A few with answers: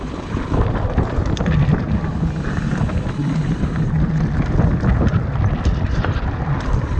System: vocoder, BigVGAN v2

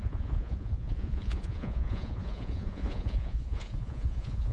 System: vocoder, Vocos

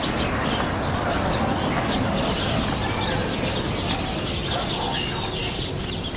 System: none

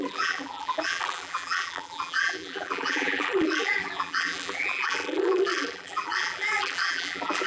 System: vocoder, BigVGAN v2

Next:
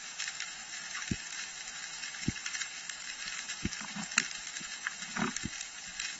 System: autoencoder, DAC-VAE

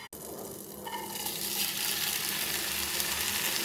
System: none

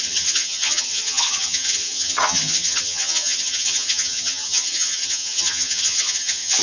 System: vocoder, HiFi-GAN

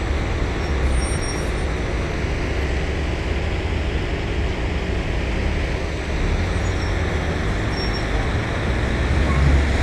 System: none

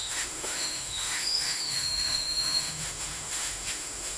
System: autoencoder, DAC-VAE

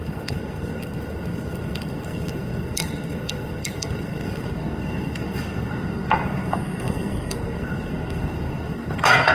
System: codec, SNAC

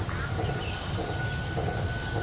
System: none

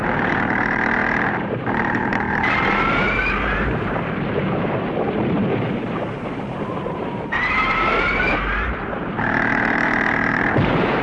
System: vocoder, BigVGAN v2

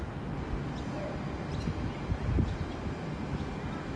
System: none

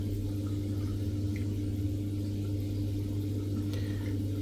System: none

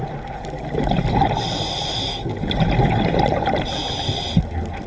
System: none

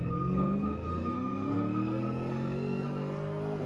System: codec, SNAC